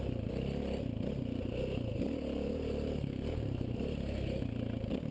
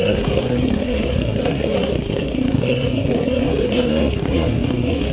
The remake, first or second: second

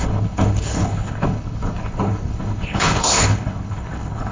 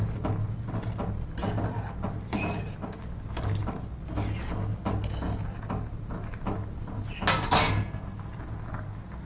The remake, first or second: first